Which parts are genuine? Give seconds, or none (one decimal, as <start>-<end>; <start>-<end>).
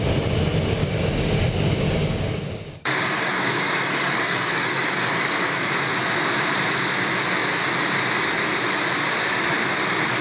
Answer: 0.0-0.8; 5.7-10.2